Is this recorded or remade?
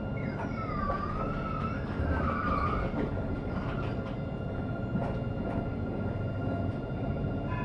recorded